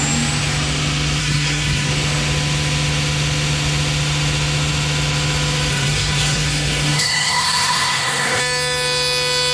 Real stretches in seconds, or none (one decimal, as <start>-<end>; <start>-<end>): 0.0-1.2; 1.9-5.7; 8.4-9.5

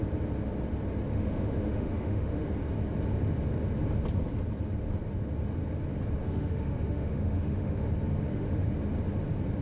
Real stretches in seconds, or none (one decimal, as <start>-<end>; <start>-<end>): 0.0-1.1; 2.5-6.2; 7.9-8.3; 8.8-9.6

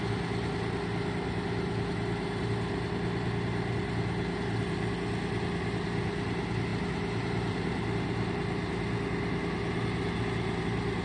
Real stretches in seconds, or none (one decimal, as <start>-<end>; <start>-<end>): 0.0-11.0

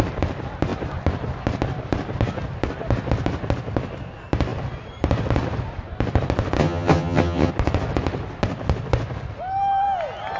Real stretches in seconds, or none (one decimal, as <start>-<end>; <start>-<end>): 0.0-6.6; 7.5-10.4

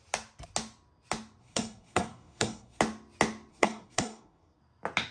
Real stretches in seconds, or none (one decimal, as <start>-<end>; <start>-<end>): 0.0-1.4; 2.8-3.5; 4.6-5.1

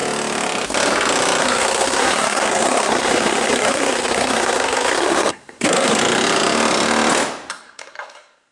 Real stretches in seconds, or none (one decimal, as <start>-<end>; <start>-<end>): 0.0-1.4; 6.0-7.5

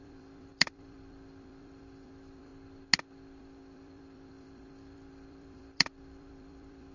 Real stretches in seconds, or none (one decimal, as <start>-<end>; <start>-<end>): 2.5-3.4

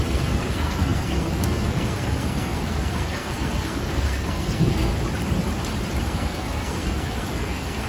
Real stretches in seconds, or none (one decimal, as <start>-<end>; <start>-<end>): 4.9-6.0